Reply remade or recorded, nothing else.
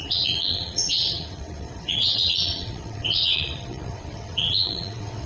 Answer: remade